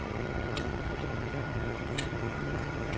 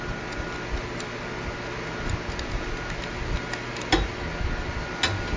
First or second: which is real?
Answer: second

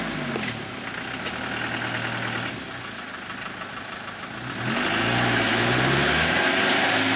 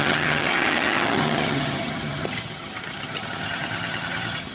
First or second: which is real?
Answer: first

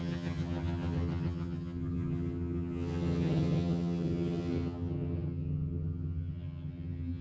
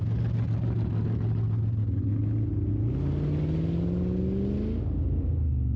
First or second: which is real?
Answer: second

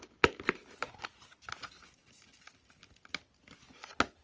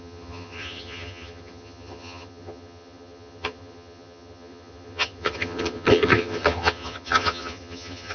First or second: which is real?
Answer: first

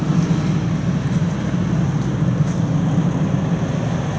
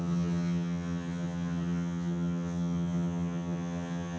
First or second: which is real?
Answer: first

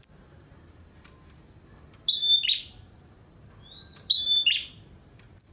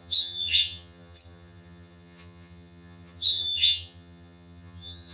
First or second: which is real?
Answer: first